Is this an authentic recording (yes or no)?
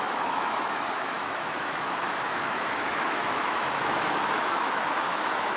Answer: no